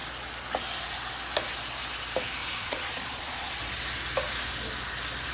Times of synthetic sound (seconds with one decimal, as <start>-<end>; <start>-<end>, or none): 2.4-3.5